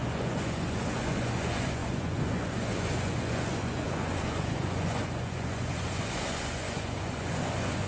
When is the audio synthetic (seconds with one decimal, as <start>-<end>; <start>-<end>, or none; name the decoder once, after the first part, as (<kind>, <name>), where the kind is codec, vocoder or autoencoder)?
0.0-7.9 (vocoder, Vocos)